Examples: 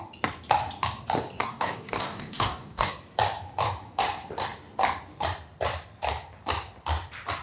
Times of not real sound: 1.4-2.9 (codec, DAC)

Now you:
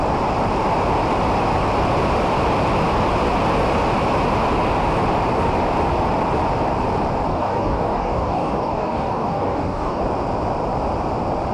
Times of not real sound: 7.3-10.0 (codec, DAC)

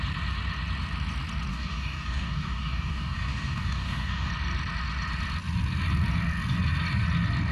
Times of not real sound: 1.5-4.3 (codec, DAC)

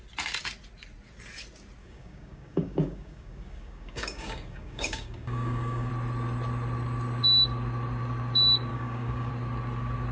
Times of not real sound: 1.8-5.9 (codec, DAC); 8.7-9.3

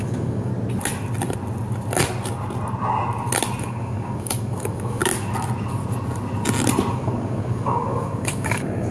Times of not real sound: 0.0-0.5 (codec, DAC); 3.6-5.0; 6.9-8.9